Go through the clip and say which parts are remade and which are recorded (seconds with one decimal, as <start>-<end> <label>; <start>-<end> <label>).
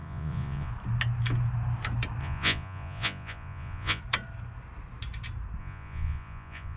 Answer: 0.0-0.7 remade; 0.7-2.2 recorded; 2.2-4.0 remade; 4.0-5.6 recorded; 5.6-6.8 remade